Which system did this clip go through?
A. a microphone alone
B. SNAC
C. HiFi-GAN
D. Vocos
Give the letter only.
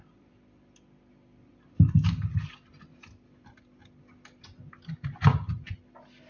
A